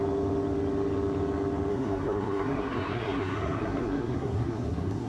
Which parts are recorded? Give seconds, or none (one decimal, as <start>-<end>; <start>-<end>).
0.0-1.7